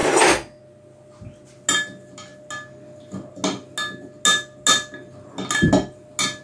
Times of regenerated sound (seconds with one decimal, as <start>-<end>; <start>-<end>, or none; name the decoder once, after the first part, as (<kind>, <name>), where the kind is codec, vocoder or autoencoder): none